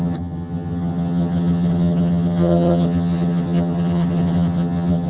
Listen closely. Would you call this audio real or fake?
fake